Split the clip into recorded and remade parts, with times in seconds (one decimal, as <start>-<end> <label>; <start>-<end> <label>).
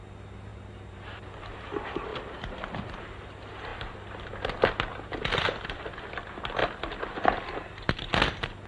0.0-0.5 recorded; 0.5-1.2 remade; 1.2-2.1 recorded; 2.1-3.0 remade; 3.0-8.7 recorded